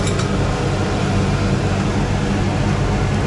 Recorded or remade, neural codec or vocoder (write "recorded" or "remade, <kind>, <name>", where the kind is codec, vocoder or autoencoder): recorded